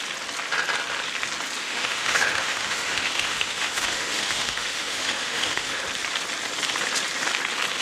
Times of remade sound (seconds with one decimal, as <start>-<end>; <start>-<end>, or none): 1.6-5.8